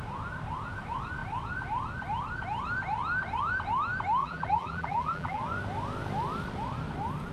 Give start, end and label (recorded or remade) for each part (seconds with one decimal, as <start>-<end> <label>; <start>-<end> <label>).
0.0-4.2 recorded; 4.2-5.4 remade; 5.4-7.3 recorded